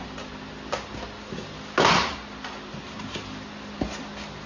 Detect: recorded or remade recorded